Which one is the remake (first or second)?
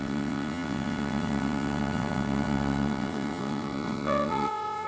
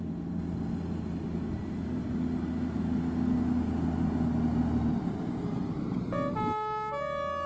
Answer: first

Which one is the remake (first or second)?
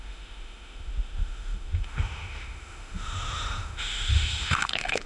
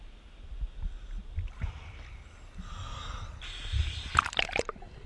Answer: first